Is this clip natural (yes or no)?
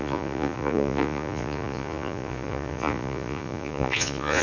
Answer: no